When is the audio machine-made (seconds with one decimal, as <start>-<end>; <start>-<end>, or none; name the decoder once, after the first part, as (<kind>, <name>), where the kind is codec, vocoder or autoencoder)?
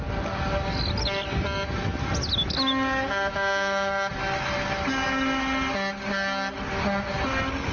none